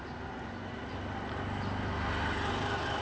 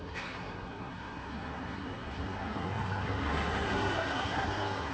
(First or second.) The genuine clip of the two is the first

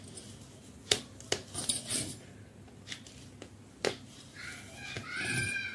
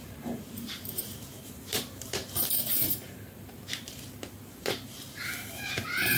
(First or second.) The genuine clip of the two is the first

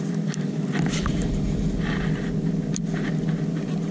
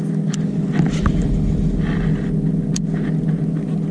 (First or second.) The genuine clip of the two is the second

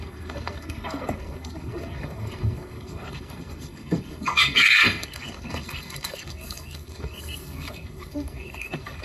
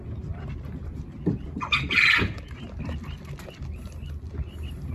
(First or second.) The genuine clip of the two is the second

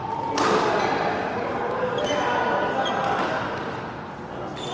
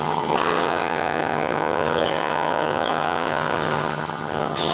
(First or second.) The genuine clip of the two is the first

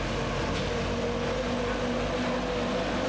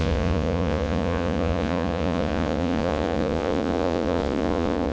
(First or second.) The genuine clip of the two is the first